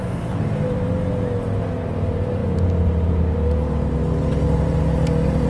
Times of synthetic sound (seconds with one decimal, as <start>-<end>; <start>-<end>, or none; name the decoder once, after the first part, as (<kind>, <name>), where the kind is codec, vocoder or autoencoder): none